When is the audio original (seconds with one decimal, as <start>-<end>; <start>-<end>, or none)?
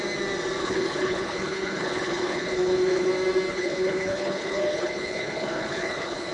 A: 0.0-0.6; 3.1-3.5